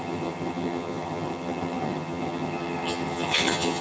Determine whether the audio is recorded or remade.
remade